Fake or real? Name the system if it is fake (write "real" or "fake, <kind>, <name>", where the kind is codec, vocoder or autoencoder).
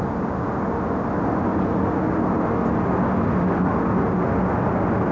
real